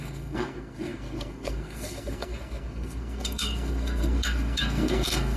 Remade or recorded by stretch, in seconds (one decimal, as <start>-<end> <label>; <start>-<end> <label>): 0.0-5.4 remade